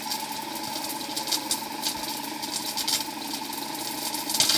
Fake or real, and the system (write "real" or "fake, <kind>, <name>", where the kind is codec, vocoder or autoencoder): real